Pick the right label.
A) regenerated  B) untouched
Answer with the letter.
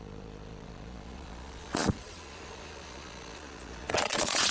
A